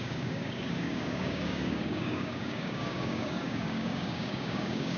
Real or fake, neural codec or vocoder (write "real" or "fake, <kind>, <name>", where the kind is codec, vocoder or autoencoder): fake, codec, DAC